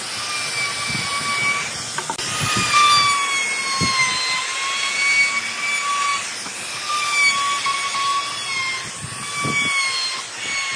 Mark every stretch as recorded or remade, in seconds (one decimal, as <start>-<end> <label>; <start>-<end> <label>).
0.0-10.8 recorded